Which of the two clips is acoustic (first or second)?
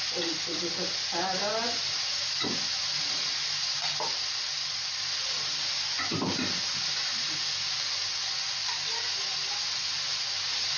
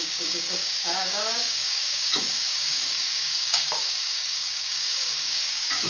first